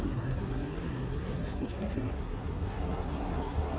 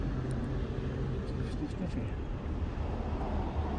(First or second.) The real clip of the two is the second